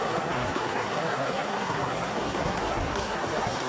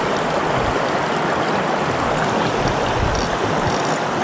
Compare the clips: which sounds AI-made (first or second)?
first